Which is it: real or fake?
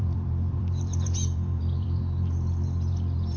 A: fake